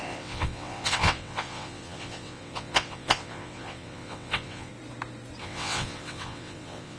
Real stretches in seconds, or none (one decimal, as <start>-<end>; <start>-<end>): 4.7-5.4